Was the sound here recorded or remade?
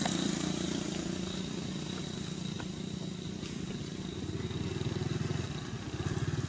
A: recorded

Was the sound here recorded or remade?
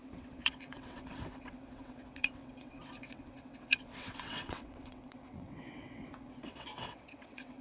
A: remade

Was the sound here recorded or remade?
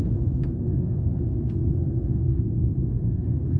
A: remade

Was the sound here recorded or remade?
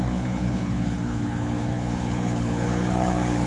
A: remade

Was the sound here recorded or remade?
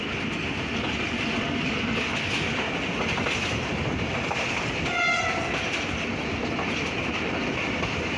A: recorded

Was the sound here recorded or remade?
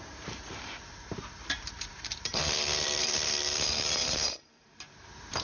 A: remade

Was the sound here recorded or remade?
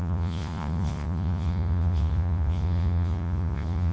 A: remade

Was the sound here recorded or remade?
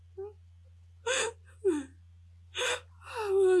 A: recorded